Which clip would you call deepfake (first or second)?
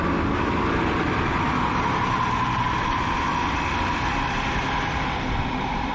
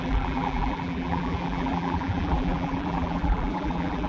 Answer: second